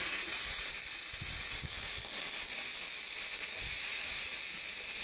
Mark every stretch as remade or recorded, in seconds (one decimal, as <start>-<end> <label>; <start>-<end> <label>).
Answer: 0.0-0.7 remade; 0.7-3.7 recorded; 3.7-4.3 remade; 4.3-5.0 recorded

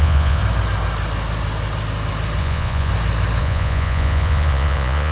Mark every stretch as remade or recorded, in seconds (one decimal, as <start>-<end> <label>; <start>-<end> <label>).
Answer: 0.0-0.4 remade; 0.4-2.4 recorded; 2.4-2.9 remade; 2.9-3.4 recorded; 3.4-5.1 remade